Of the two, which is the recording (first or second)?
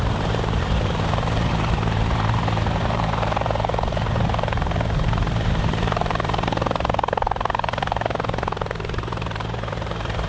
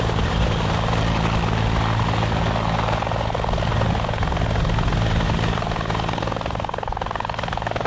second